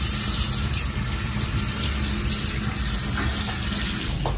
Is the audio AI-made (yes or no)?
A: no